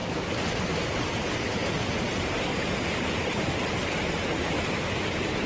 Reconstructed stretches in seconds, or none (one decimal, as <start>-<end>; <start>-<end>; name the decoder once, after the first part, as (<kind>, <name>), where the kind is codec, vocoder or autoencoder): none